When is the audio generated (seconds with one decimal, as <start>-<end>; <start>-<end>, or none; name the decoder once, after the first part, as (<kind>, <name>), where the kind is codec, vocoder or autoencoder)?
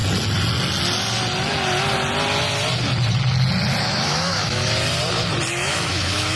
3.8-4.6 (autoencoder, DAC-VAE); 5.5-6.4